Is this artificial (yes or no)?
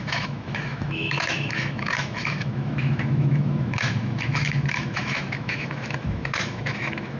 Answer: yes